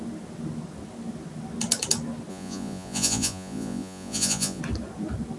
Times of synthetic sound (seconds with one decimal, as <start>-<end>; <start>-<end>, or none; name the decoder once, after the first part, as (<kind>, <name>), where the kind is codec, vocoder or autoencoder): 2.3-4.6 (vocoder, Vocos)